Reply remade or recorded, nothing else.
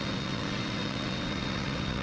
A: remade